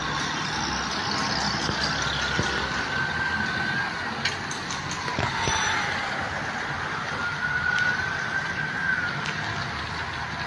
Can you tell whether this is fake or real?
real